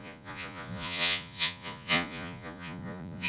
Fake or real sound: fake